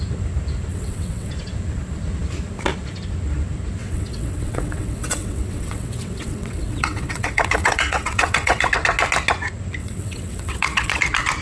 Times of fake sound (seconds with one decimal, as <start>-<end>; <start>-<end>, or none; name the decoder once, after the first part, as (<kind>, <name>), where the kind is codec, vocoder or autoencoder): 0.7-1.3 (vocoder, WaveNeXt); 3.8-8.7; 9.8-11.0